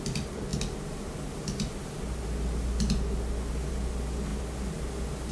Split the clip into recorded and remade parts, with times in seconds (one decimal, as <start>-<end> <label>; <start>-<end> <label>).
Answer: 0.0-5.3 recorded